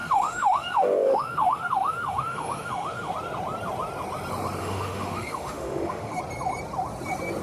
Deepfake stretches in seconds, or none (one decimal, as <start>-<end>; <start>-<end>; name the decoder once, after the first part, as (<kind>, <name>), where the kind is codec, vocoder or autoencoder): 0.0-3.1 (autoencoder, DAC-VAE); 4.6-6.2